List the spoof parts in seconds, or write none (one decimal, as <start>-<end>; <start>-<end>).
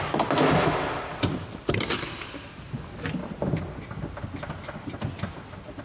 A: none